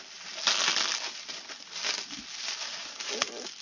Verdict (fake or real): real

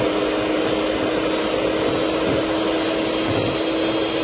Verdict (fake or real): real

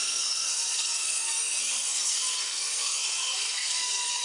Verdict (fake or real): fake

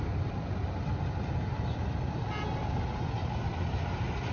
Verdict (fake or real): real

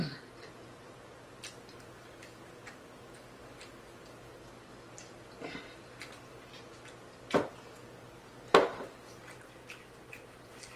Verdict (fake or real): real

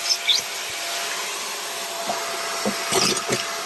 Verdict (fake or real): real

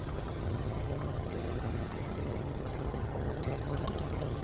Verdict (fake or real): fake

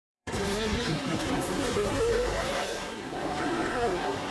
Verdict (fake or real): fake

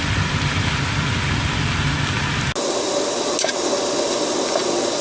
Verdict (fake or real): real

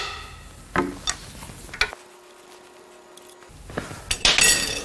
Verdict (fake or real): real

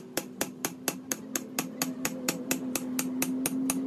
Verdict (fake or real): real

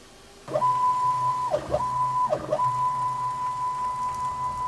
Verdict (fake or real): real